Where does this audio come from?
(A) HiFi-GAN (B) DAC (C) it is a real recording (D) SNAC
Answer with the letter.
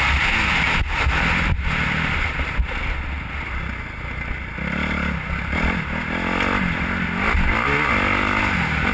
C